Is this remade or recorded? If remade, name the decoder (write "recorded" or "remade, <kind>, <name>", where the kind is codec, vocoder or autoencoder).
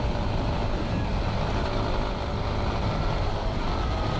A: recorded